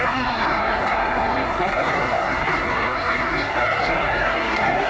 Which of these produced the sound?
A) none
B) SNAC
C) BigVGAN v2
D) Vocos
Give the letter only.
B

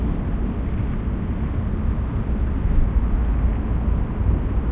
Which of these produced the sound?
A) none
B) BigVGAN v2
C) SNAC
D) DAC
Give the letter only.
A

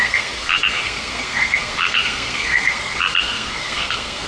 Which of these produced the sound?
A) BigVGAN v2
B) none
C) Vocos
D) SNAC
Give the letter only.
D